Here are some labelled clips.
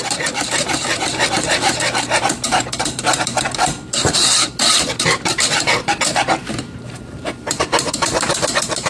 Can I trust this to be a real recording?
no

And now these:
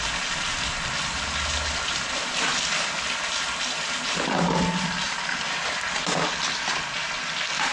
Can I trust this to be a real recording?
yes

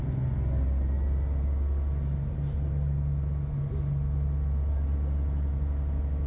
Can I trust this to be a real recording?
yes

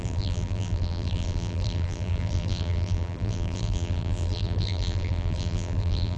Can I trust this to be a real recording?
no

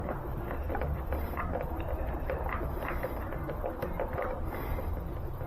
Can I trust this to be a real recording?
no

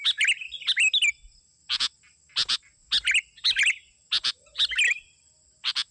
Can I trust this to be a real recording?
yes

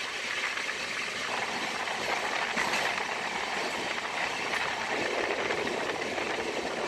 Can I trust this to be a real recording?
no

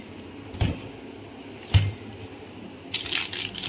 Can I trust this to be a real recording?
yes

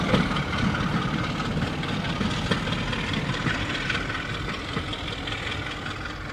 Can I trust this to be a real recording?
yes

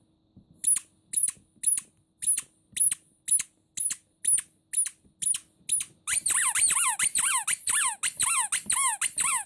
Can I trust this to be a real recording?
yes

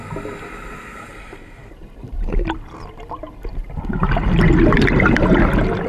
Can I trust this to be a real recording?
yes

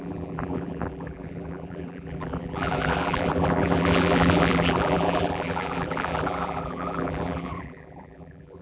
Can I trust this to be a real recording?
no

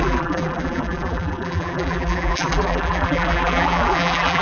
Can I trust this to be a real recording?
no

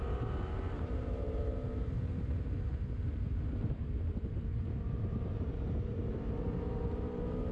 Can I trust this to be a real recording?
no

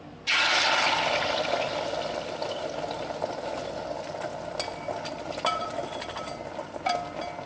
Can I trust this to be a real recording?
yes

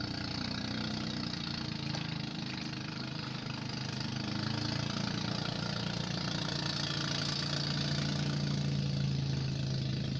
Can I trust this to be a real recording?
yes